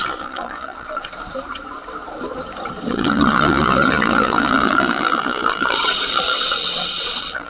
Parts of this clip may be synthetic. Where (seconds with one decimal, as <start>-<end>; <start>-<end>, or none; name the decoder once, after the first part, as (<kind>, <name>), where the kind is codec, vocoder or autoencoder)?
0.0-1.1 (vocoder, Vocos); 2.9-7.5